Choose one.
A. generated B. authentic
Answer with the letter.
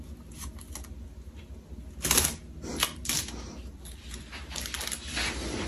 B